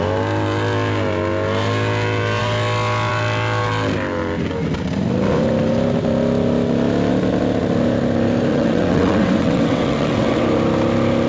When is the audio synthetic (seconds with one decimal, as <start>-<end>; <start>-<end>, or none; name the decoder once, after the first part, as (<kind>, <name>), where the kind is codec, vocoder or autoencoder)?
8.5-10.4 (vocoder, WaveNeXt)